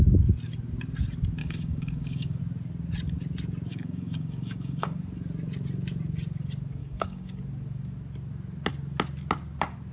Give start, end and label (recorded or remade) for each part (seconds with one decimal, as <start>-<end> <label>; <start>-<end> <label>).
0.0-1.4 recorded; 1.4-2.4 remade; 2.4-3.7 recorded; 3.7-5.0 remade; 5.0-6.8 recorded; 6.8-7.4 remade; 7.4-9.9 recorded